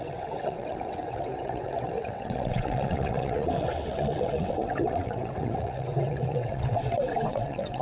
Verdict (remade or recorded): remade